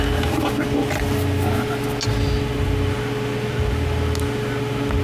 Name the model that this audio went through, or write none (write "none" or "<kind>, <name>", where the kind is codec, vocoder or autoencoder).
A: none